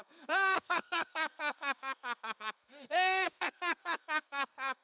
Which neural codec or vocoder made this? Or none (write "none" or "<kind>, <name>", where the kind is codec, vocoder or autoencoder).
codec, SNAC